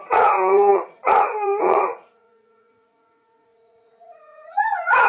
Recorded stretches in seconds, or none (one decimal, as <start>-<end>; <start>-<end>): none